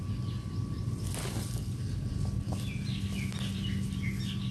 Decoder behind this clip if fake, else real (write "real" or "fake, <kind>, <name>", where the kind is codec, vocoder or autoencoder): real